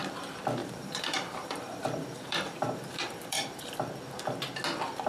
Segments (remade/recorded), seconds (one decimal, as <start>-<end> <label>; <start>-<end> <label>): 0.0-0.6 recorded; 0.6-3.7 remade; 3.7-5.1 recorded